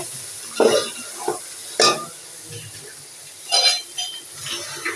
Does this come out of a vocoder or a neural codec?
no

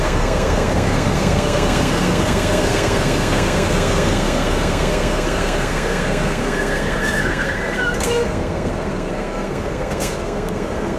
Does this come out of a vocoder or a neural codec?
yes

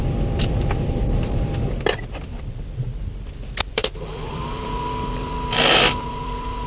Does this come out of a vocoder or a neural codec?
yes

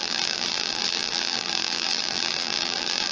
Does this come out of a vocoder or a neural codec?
yes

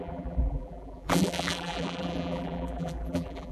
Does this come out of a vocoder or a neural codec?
yes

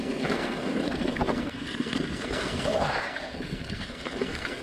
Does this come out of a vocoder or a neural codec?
yes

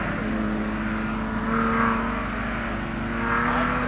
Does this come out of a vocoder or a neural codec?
no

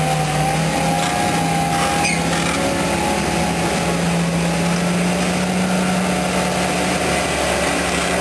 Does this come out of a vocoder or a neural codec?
no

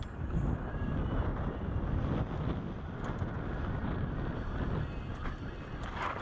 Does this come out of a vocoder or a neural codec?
no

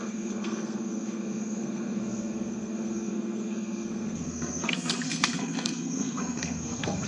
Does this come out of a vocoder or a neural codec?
yes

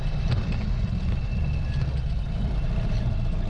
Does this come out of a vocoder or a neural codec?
no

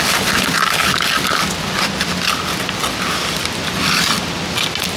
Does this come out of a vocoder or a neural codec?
no